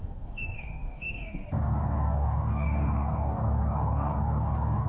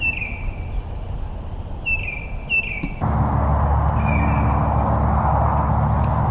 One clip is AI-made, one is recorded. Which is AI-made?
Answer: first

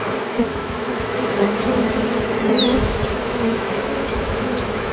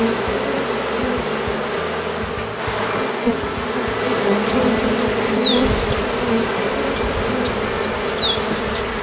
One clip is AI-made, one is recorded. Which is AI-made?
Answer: first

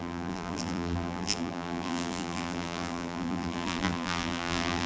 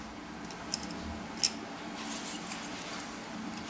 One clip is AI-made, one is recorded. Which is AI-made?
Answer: first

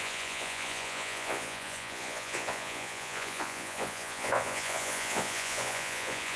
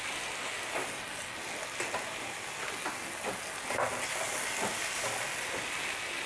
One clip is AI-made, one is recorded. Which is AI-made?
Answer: first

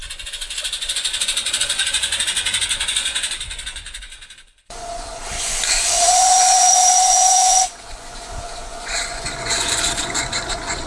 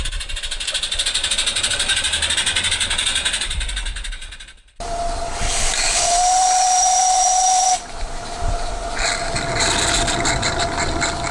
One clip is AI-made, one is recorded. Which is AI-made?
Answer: first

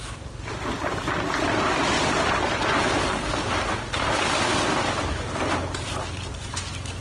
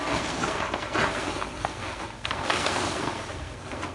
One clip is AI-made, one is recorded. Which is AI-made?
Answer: second